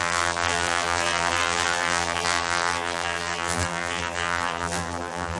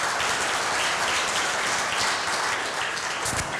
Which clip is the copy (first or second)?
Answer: first